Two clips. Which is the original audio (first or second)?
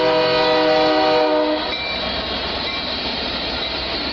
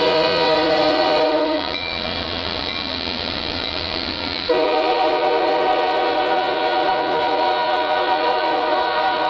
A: first